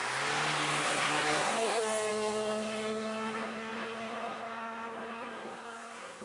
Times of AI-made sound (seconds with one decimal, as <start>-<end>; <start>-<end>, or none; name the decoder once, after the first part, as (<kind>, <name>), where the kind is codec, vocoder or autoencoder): 0.8-6.2 (codec, SNAC)